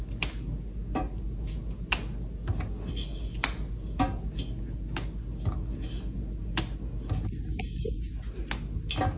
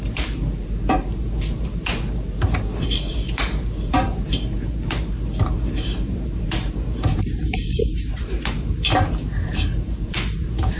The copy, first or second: second